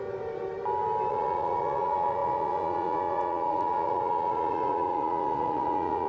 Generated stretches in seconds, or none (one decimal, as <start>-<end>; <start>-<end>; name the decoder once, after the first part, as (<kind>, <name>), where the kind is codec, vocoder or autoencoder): 1.1-6.1 (vocoder, Vocos)